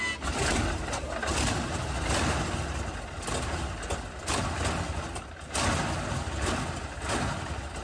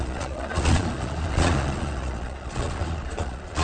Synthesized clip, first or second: second